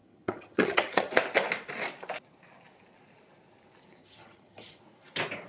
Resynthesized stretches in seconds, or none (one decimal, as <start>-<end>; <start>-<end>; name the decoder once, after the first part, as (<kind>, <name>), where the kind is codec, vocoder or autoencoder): 0.0-1.1 (vocoder, HiFi-GAN); 4.0-4.8

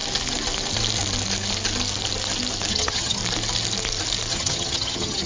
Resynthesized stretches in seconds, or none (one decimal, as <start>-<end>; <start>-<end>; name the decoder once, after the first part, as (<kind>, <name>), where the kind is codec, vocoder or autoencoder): 2.7-3.2 (vocoder, HiFi-GAN); 4.3-5.3

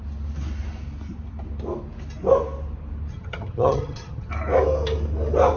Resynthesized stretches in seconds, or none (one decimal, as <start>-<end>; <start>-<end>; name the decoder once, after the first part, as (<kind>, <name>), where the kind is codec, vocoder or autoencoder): 3.1-4.3 (vocoder, HiFi-GAN)

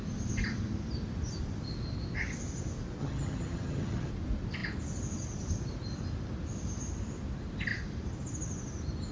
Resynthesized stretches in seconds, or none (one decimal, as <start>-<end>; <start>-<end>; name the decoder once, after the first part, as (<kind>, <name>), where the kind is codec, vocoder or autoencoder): 3.0-4.1 (vocoder, HiFi-GAN)

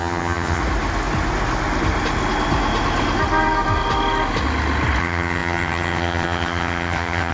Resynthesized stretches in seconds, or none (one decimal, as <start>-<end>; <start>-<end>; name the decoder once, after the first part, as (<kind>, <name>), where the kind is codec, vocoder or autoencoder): 0.0-0.6 (vocoder, HiFi-GAN); 5.0-7.3

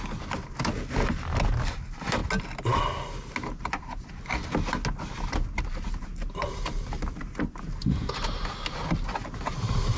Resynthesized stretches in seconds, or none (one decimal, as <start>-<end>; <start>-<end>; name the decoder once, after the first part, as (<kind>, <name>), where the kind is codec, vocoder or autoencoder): none

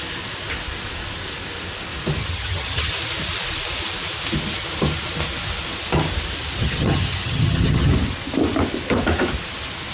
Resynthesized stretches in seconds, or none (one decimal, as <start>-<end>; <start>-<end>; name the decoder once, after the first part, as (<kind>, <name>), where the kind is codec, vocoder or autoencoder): 2.2-2.9 (vocoder, HiFi-GAN); 6.6-7.9